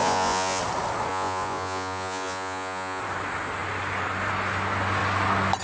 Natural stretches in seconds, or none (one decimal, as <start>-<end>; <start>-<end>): 0.6-1.1; 3.0-5.6